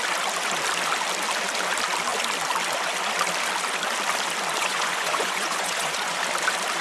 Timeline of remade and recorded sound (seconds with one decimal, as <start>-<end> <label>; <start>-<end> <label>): 0.0-4.6 recorded; 4.6-6.2 remade; 6.2-6.8 recorded